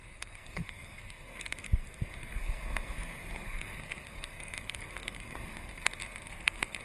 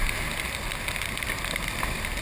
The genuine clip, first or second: second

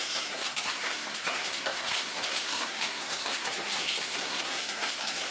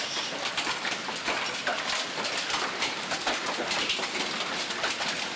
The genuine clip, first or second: second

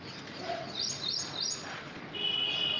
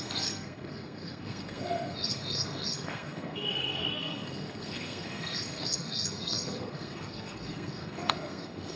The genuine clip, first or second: first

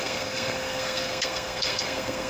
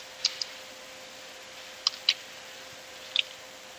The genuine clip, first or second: second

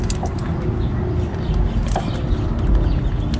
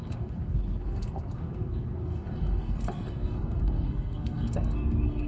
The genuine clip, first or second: first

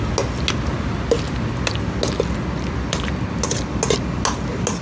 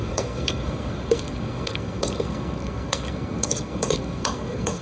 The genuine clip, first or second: first